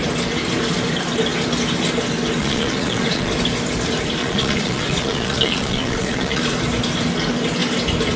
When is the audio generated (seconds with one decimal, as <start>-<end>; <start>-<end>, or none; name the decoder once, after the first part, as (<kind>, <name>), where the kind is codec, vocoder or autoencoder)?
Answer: 2.4-3.3 (vocoder, Vocos); 4.2-6.4